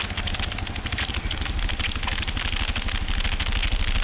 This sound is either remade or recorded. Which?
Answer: recorded